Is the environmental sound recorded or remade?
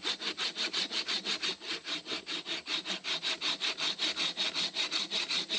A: recorded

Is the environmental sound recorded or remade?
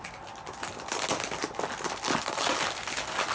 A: recorded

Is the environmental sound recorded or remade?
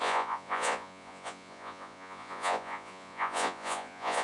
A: remade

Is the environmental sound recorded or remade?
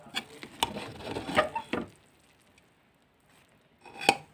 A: recorded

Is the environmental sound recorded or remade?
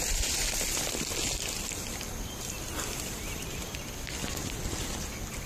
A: recorded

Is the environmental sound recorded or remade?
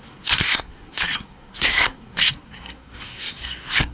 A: remade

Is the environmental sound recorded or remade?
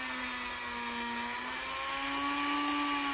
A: recorded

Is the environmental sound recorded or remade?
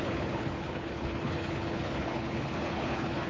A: remade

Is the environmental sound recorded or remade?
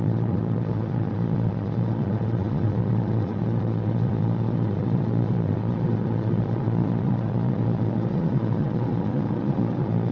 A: remade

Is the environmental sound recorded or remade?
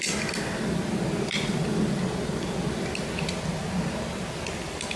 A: recorded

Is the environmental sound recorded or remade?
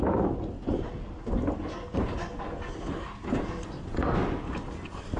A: recorded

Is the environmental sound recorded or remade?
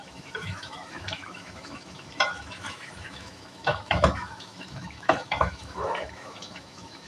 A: remade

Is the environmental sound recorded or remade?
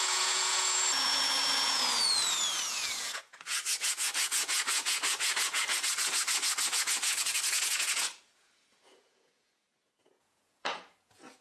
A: remade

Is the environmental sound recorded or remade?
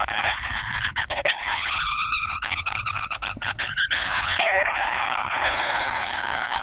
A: remade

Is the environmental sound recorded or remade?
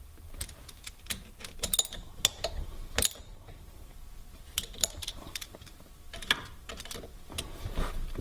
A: remade